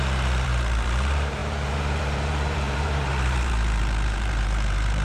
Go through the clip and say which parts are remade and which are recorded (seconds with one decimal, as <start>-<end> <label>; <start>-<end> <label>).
0.0-5.0 remade